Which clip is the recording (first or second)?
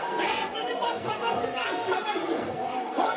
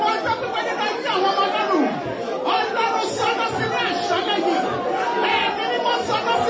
second